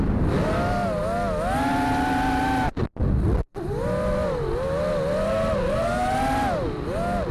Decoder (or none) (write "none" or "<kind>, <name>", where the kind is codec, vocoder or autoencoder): none